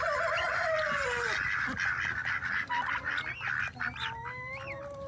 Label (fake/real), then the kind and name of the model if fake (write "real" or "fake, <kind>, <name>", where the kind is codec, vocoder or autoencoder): real